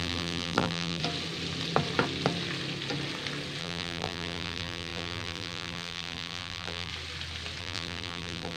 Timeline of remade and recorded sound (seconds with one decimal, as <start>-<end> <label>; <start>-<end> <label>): 0.0-1.0 remade; 1.0-3.6 recorded; 3.6-6.9 remade; 6.9-7.6 recorded; 7.6-8.6 remade